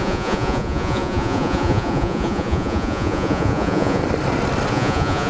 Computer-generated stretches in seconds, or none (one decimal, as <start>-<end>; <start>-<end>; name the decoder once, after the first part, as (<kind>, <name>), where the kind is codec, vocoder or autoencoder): 0.0-4.0 (vocoder, Vocos); 4.7-5.3